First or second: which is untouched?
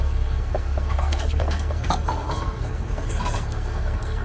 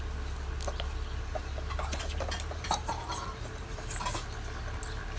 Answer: second